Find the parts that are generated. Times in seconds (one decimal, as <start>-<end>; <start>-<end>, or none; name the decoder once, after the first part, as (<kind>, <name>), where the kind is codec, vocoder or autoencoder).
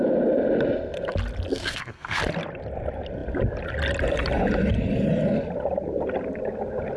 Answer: 1.5-2.2 (codec, SNAC)